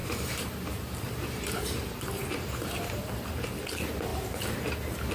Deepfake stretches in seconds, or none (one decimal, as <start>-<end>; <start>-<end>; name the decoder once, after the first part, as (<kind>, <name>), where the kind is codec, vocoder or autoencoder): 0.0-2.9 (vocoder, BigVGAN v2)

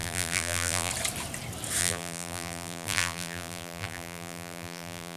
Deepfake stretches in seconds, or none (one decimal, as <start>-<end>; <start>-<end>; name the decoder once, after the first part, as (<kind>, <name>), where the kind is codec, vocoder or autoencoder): 0.0-0.9 (vocoder, BigVGAN v2); 1.8-5.2

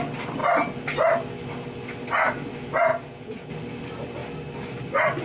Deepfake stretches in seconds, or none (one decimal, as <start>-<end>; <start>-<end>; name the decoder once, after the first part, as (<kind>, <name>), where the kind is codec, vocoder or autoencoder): 2.9-3.5 (vocoder, Vocos)

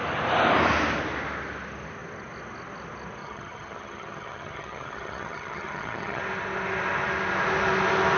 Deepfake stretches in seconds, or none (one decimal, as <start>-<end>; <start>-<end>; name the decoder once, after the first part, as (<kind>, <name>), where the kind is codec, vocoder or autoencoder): 3.2-6.2 (vocoder, HiFi-GAN)

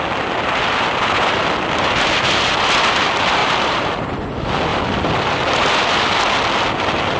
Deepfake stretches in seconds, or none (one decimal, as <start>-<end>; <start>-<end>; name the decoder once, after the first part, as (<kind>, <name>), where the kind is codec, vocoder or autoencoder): 3.4-4.2 (vocoder, BigVGAN v2); 4.7-5.7